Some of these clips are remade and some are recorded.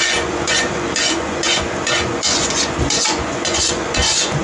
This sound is remade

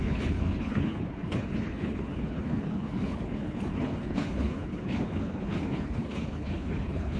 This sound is remade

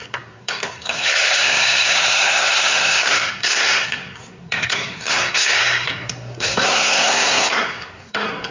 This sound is remade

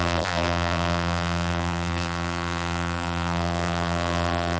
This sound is remade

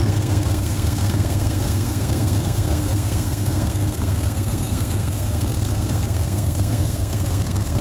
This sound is remade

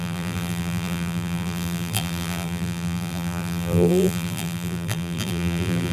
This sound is remade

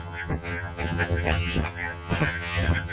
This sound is remade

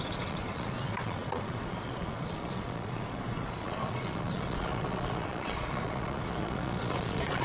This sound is remade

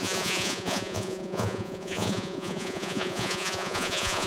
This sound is remade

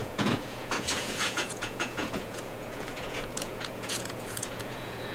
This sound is remade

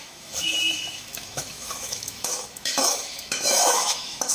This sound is remade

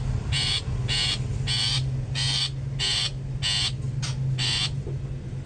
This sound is recorded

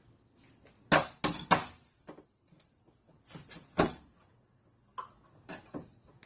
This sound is recorded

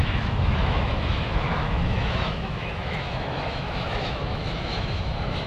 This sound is remade